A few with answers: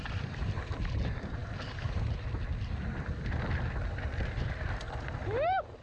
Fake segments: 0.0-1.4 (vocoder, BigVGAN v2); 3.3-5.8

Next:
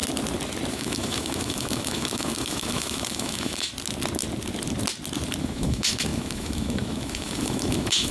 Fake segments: 0.7-3.7 (autoencoder, DAC-VAE); 5.4-8.1

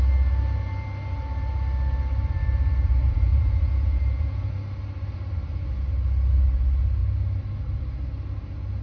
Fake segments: 3.0-4.5 (vocoder, Vocos)

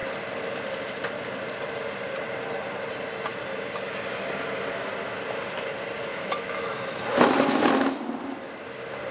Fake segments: 6.1-7.0 (autoencoder, DAC-VAE)

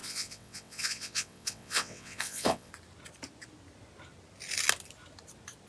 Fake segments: 0.0-2.7 (vocoder, WaveNeXt)

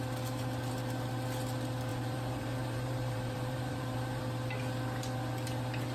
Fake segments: 1.9-4.2 (vocoder, BigVGAN v2)